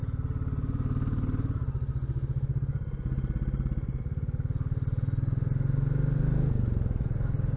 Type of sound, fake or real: real